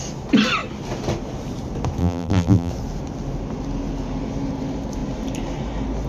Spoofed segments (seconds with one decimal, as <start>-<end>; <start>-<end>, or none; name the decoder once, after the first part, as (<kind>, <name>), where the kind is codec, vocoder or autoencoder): 2.0-2.7 (vocoder, BigVGAN v2)